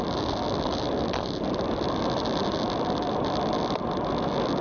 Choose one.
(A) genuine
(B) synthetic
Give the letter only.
A